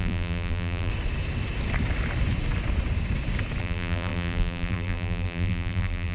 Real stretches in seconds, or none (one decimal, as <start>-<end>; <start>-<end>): 0.9-3.6